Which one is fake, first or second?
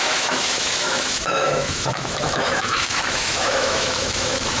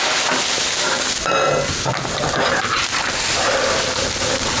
first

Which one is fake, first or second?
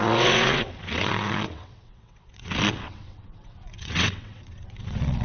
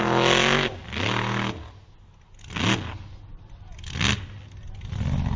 first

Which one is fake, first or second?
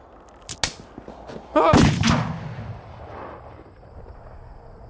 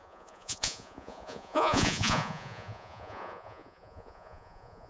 second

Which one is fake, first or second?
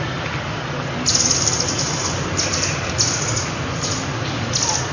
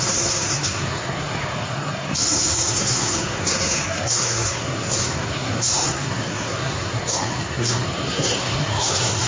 second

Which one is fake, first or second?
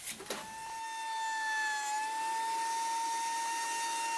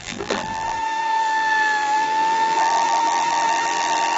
second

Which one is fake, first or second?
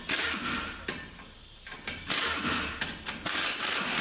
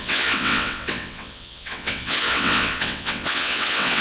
second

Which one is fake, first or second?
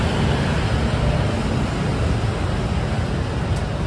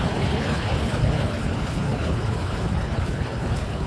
second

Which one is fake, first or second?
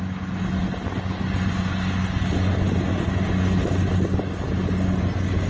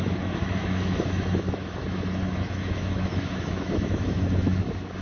second